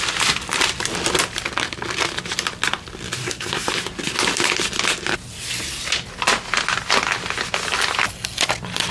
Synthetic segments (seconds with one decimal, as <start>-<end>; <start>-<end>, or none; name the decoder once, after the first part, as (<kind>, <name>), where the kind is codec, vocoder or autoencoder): 3.2-3.7 (codec, SNAC)